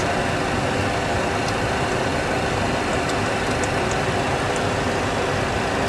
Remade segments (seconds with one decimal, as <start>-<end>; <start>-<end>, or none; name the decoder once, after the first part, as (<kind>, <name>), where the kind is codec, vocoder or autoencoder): none